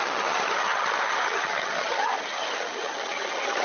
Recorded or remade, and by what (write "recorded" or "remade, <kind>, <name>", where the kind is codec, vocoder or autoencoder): remade, vocoder, HiFi-GAN